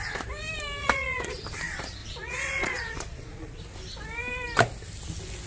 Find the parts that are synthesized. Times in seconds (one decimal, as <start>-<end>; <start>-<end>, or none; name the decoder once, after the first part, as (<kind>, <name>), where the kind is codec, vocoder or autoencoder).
0.8-1.4 (vocoder, Vocos); 2.0-3.6